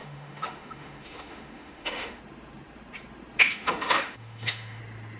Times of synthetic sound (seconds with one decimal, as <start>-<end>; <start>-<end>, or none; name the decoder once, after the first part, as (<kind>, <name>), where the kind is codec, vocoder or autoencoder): 0.0-2.2 (autoencoder, DAC-VAE); 3.4-4.8